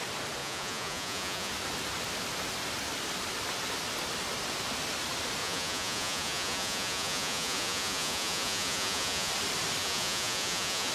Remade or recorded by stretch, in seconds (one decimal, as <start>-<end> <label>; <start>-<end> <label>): 0.0-0.4 recorded; 0.4-1.5 remade; 1.5-5.4 recorded; 5.4-9.3 remade; 9.3-9.8 recorded; 9.8-10.9 remade

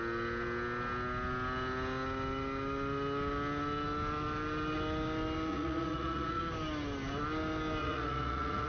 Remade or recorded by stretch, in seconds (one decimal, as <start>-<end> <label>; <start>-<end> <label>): 0.0-5.5 recorded; 5.5-6.4 remade; 6.4-7.8 recorded; 7.8-8.7 remade

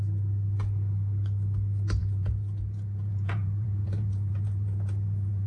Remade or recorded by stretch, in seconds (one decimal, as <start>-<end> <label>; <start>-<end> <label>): 0.0-2.0 recorded; 2.0-5.5 remade

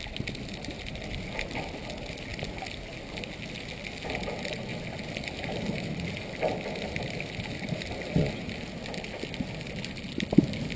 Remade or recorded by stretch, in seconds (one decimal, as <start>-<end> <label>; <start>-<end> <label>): 0.0-10.8 recorded

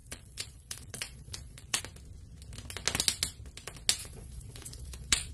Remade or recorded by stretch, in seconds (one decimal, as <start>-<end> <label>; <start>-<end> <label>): 0.0-1.8 remade; 1.8-4.0 recorded; 4.0-5.3 remade

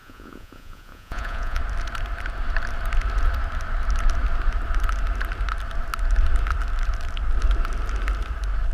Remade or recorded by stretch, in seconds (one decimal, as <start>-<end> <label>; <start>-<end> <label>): 0.0-1.6 remade; 1.6-8.7 recorded

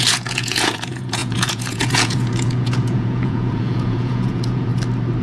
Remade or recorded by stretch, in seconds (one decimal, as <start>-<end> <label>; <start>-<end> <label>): 0.0-4.7 remade; 4.7-5.2 recorded

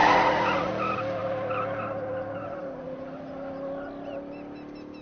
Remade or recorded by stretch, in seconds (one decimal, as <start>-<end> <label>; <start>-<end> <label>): 0.0-0.7 remade; 0.7-5.0 recorded